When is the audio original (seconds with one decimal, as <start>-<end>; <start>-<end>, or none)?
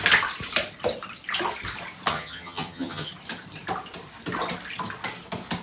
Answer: 0.0-2.1; 3.1-5.6